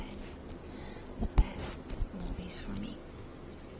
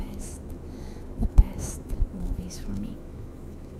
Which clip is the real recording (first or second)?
first